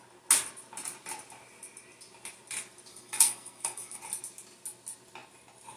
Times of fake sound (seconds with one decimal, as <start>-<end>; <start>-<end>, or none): 2.9-4.0